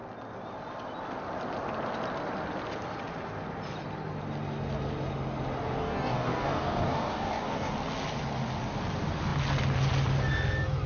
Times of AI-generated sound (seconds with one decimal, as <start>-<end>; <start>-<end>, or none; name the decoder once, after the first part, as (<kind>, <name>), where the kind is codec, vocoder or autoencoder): 5.8-7.7 (codec, DAC)